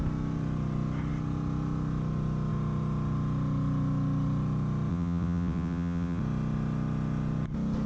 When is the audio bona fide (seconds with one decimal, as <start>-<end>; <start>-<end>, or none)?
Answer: 0.0-4.9; 6.2-7.9